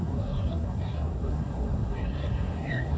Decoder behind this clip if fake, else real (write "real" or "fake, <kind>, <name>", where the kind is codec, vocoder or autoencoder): fake, codec, SNAC